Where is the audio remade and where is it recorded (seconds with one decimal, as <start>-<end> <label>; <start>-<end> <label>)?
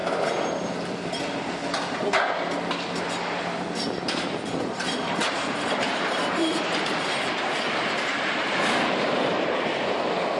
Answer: 0.0-4.8 recorded; 4.8-9.7 remade; 9.7-10.4 recorded